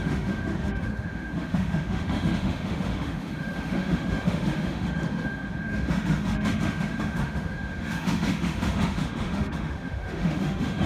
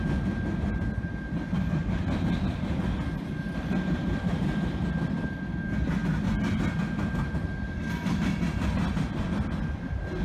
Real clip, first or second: second